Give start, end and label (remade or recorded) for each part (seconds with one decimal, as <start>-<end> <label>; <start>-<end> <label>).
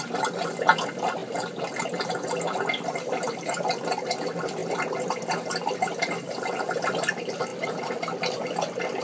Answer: 0.0-9.0 recorded